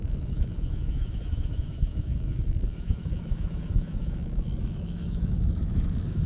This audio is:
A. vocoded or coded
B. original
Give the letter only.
A